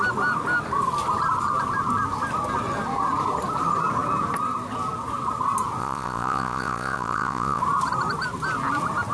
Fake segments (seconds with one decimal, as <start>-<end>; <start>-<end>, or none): 5.8-7.6